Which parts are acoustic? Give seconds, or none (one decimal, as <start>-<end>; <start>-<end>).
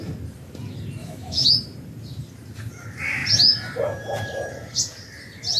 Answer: 0.0-1.0; 1.5-5.6